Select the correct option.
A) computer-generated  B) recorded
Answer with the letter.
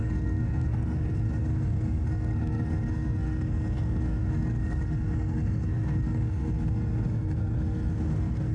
A